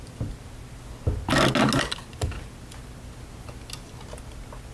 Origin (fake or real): real